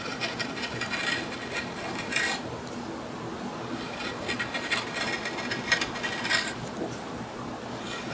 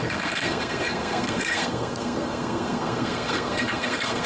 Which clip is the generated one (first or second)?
second